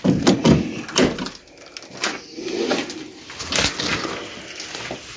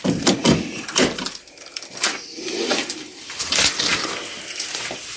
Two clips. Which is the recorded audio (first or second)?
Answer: first